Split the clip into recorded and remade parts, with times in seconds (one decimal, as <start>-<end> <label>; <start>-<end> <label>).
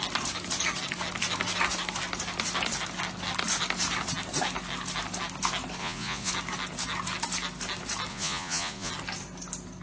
0.0-5.8 recorded; 5.8-6.3 remade; 6.3-8.1 recorded; 8.1-8.9 remade; 8.9-9.8 recorded